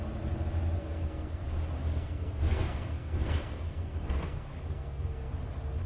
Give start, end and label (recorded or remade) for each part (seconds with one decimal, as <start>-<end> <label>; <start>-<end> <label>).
0.0-0.8 recorded; 0.8-1.4 remade; 1.4-1.8 recorded; 1.8-5.3 remade; 5.3-5.9 recorded